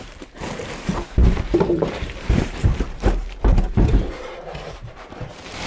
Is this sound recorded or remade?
remade